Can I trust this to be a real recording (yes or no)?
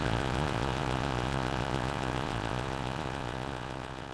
no